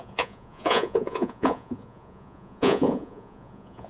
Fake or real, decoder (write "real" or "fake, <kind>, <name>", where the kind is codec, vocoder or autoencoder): fake, vocoder, Vocos